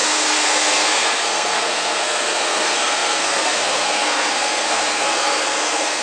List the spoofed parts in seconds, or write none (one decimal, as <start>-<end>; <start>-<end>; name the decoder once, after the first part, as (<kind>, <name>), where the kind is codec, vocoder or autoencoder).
0.0-6.0 (codec, SNAC)